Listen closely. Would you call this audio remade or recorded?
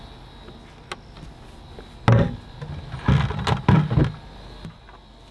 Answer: recorded